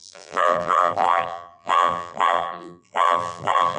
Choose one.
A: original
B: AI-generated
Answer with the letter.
B